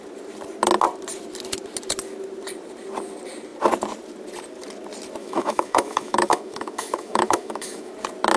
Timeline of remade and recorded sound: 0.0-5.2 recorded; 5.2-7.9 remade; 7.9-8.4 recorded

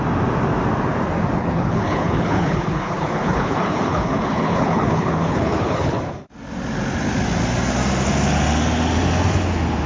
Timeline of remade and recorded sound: 0.0-1.4 recorded; 1.4-6.0 remade; 6.0-9.9 recorded

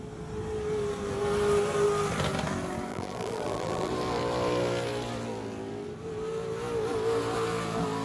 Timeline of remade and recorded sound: 0.0-2.9 recorded; 2.9-3.9 remade; 3.9-8.0 recorded

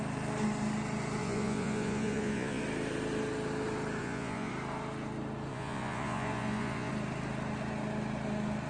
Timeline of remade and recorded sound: 0.0-1.2 recorded; 1.2-2.6 remade; 2.6-4.0 recorded; 4.0-4.5 remade; 4.5-5.5 recorded; 5.5-6.9 remade; 6.9-8.7 recorded

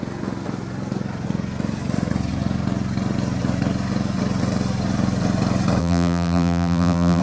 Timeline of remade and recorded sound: 0.0-5.8 recorded; 5.8-7.2 remade